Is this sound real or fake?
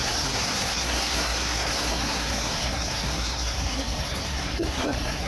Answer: fake